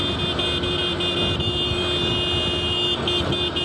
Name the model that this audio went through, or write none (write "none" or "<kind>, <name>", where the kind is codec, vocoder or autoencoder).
none